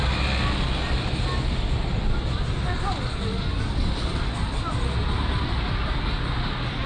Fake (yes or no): no